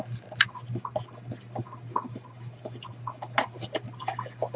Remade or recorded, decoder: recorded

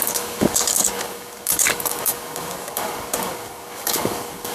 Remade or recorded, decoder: remade, codec, DAC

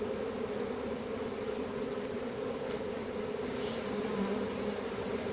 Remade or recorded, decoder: recorded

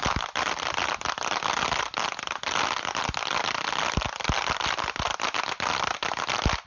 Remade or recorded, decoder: recorded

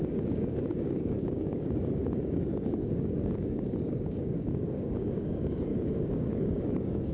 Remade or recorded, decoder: remade, codec, DAC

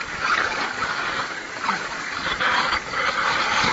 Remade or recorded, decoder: remade, codec, DAC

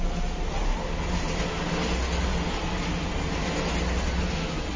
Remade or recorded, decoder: recorded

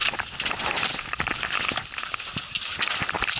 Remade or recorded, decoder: recorded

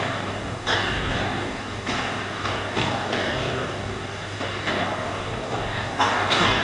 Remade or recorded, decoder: remade, codec, DAC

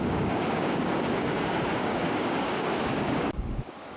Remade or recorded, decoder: remade, codec, DAC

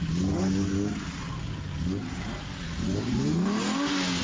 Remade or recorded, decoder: recorded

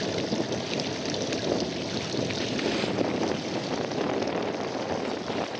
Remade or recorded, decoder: recorded